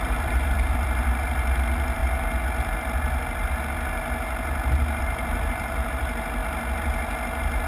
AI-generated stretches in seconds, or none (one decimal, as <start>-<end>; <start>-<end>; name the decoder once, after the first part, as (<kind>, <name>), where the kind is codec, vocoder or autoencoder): 0.0-2.0 (vocoder, BigVGAN v2); 5.0-6.4

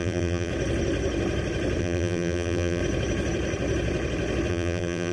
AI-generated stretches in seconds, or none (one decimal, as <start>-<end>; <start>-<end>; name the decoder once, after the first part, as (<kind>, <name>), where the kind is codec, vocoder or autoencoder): 0.0-0.5 (vocoder, BigVGAN v2); 1.8-2.8; 4.5-5.1

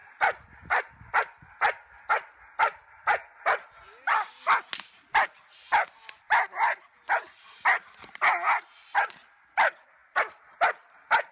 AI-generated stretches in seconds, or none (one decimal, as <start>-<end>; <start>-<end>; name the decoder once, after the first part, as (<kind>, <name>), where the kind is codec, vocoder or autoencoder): 0.0-1.1 (vocoder, BigVGAN v2)

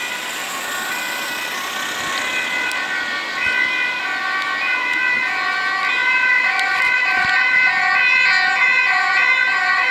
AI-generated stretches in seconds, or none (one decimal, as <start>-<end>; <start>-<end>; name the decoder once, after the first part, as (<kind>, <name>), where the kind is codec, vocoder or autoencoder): 6.0-7.7 (vocoder, BigVGAN v2)